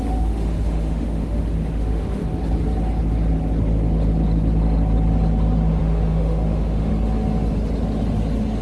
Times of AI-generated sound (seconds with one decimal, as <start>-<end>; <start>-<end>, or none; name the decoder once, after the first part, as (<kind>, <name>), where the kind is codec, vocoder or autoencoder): 0.0-2.2 (autoencoder, DAC-VAE); 5.8-6.9